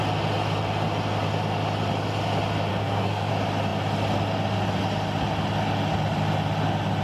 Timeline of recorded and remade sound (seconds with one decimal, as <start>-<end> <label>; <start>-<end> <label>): 0.0-2.7 recorded; 2.7-3.3 remade; 3.3-7.0 recorded